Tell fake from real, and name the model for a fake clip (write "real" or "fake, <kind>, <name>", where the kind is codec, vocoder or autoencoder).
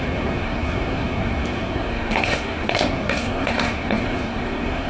fake, codec, SNAC